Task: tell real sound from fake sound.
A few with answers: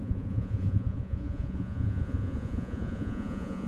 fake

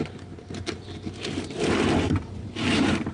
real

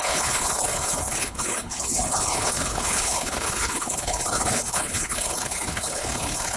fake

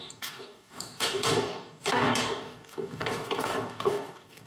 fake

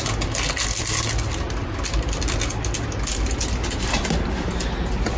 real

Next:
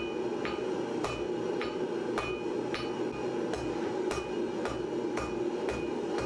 real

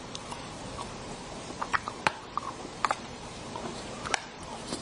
fake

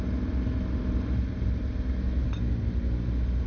real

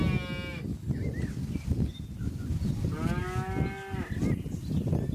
real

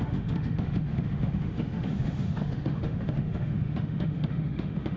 fake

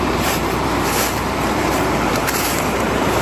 fake